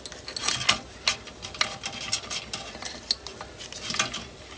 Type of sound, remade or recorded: recorded